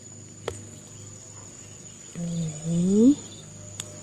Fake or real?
real